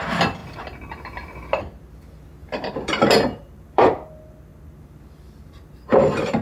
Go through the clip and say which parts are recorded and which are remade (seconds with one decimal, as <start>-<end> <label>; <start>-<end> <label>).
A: 0.0-2.4 recorded; 2.4-4.1 remade; 4.1-4.5 recorded; 4.5-6.4 remade